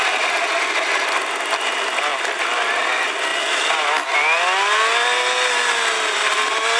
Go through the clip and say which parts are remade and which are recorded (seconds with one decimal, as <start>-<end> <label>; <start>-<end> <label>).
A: 0.0-6.8 recorded